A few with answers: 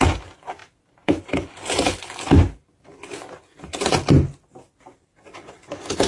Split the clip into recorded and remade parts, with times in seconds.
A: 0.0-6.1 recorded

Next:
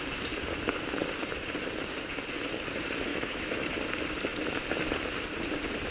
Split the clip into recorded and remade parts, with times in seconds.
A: 0.0-3.1 recorded; 3.1-3.7 remade; 3.7-5.9 recorded

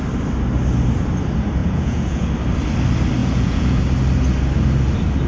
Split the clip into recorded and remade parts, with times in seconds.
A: 0.0-1.6 recorded; 1.6-2.3 remade; 2.3-3.2 recorded; 3.2-3.8 remade; 3.8-5.3 recorded

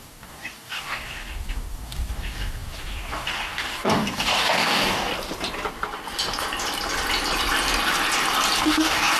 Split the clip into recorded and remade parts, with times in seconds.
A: 0.0-5.1 remade; 5.1-8.6 recorded; 8.6-9.2 remade

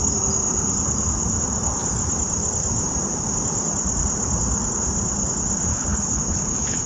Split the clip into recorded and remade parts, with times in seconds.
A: 0.0-5.7 recorded; 5.7-6.9 remade

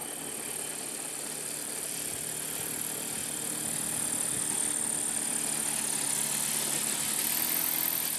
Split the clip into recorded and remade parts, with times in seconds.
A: 0.0-8.2 recorded